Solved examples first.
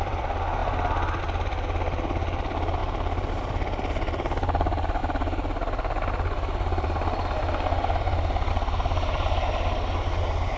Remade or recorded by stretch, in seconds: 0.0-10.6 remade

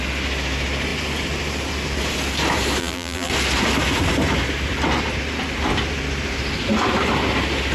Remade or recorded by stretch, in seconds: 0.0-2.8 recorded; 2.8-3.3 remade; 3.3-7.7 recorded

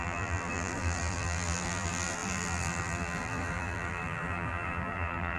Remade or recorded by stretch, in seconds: 0.0-5.4 remade

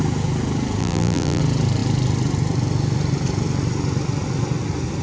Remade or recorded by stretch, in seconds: 0.0-0.8 recorded; 0.8-1.4 remade; 1.4-5.0 recorded

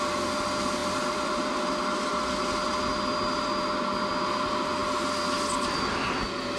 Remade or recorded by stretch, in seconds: 0.0-0.8 recorded; 0.8-1.6 remade; 1.6-6.6 recorded